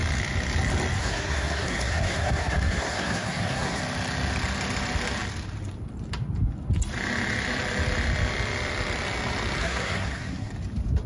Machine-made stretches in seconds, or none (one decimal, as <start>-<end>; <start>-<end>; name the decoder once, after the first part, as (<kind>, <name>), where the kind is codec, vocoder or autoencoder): 1.0-3.8 (codec, SNAC); 9.6-10.5